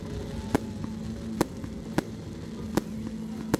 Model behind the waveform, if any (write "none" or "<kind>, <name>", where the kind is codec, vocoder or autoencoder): none